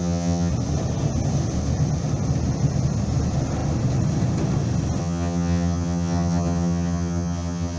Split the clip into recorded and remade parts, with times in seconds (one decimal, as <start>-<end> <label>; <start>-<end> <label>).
0.0-0.5 remade; 0.5-5.0 recorded; 5.0-7.8 remade